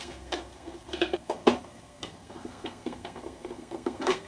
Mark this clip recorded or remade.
remade